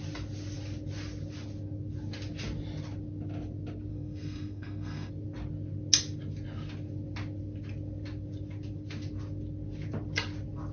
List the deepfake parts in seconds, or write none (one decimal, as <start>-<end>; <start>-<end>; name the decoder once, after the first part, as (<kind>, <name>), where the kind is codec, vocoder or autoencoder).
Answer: 3.9-5.1 (codec, SNAC)